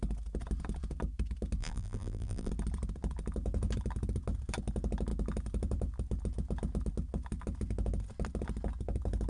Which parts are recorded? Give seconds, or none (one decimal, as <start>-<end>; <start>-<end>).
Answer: 0.0-1.6; 2.5-9.3